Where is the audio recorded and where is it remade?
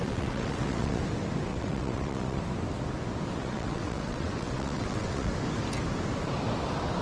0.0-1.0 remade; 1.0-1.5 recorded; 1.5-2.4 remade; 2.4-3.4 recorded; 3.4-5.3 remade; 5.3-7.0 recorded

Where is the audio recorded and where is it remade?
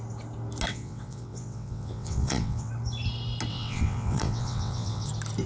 0.0-0.7 recorded; 0.7-2.7 remade; 2.7-3.5 recorded; 3.5-5.1 remade; 5.1-5.5 recorded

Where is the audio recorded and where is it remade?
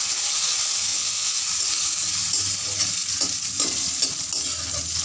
0.0-0.9 recorded; 0.9-1.4 remade; 1.4-5.0 recorded